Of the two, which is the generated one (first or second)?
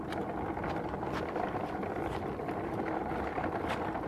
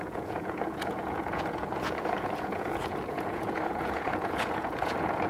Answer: second